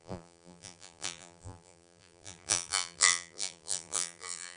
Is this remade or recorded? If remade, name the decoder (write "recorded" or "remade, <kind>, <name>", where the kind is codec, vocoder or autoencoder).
remade, vocoder, BigVGAN v2